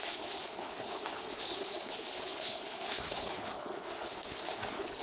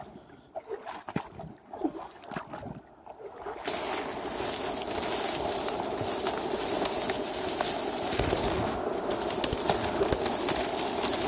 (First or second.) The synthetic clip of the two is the first